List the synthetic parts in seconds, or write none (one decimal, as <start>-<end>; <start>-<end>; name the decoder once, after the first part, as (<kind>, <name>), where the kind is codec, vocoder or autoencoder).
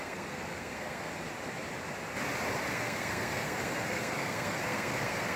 0.0-1.1 (codec, SNAC); 2.7-5.4